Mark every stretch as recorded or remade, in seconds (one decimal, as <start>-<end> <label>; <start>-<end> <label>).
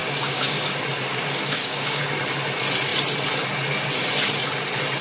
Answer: 0.0-0.7 remade; 0.7-1.1 recorded; 1.1-2.1 remade; 2.1-5.0 recorded